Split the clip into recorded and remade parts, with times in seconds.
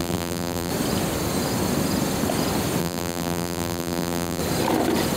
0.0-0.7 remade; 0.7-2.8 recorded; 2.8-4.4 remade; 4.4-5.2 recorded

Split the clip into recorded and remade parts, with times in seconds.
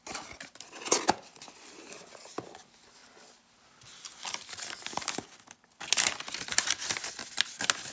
0.0-7.9 recorded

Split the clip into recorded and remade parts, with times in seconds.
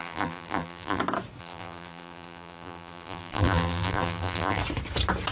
0.0-1.0 remade; 1.0-1.4 recorded; 1.4-4.6 remade; 4.6-5.3 recorded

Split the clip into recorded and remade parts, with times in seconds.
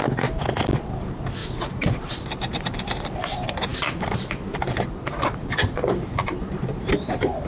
0.0-1.4 recorded; 1.4-2.1 remade; 2.1-3.7 recorded; 3.7-4.3 remade; 4.3-7.5 recorded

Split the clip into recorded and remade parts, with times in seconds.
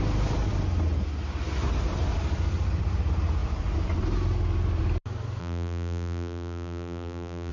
0.0-5.4 recorded; 5.4-7.5 remade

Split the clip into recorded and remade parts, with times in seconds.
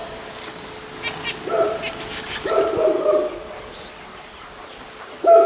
0.0-5.5 recorded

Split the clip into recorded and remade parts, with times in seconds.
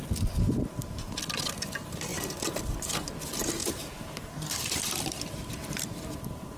0.0-3.6 recorded; 3.6-6.6 remade